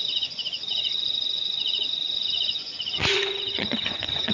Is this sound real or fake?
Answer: fake